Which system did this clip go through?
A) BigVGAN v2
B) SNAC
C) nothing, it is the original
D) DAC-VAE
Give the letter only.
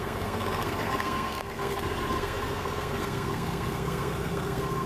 B